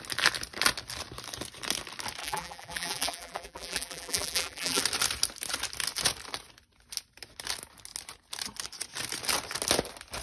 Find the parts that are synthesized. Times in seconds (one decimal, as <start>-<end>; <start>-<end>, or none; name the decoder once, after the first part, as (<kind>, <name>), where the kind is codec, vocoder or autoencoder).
2.2-4.8 (vocoder, BigVGAN v2)